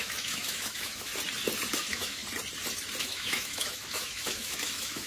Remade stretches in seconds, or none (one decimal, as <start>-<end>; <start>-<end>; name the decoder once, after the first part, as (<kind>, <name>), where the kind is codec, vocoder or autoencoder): 0.0-1.1 (autoencoder, DAC-VAE); 1.7-2.2; 3.0-5.1